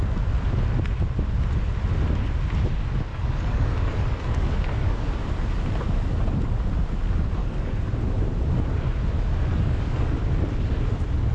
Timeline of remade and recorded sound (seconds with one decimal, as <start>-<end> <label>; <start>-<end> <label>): 0.0-3.1 recorded; 3.1-5.1 remade; 5.1-7.4 recorded; 7.4-7.9 remade; 7.9-9.5 recorded; 9.5-10.1 remade; 10.1-11.3 recorded